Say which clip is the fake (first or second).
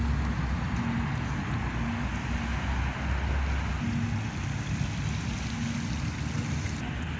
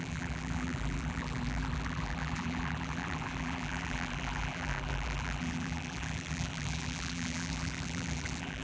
second